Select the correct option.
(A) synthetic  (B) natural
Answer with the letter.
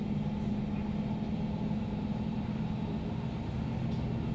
B